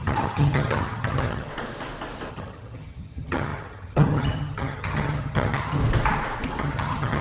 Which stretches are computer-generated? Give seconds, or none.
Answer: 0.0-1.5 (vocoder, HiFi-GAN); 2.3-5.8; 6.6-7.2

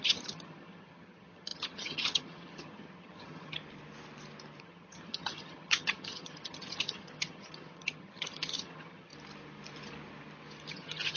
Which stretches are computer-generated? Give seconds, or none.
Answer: 0.0-3.6 (vocoder, HiFi-GAN); 4.6-9.1; 10.7-11.2

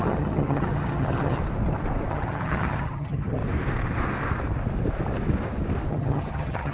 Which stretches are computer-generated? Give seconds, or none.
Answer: 0.0-1.4 (vocoder, HiFi-GAN); 2.1-3.4; 5.9-6.7

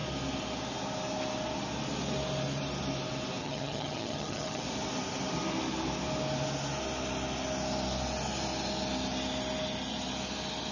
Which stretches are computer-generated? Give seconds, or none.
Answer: 3.4-4.6 (vocoder, HiFi-GAN)

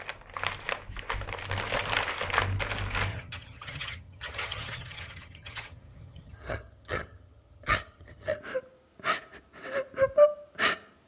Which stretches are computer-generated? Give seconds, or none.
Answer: 3.1-8.4 (vocoder, HiFi-GAN)

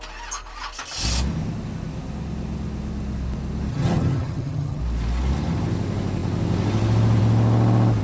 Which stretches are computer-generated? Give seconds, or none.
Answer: 3.7-4.8 (vocoder, HiFi-GAN)

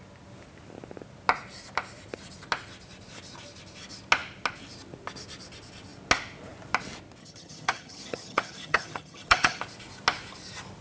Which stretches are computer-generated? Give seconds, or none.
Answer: 7.2-9.6 (vocoder, HiFi-GAN)

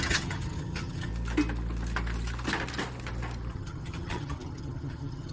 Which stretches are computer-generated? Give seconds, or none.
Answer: 0.0-1.1 (vocoder, HiFi-GAN); 3.5-5.3